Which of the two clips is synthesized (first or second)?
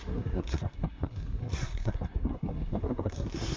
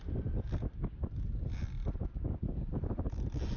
first